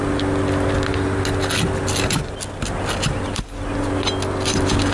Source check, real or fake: real